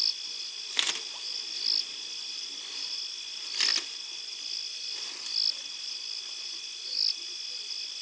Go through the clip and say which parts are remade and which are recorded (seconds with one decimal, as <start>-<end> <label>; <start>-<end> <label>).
0.0-8.0 recorded